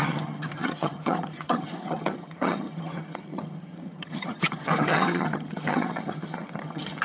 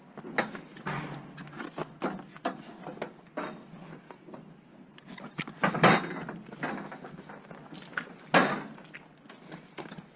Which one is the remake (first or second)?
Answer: first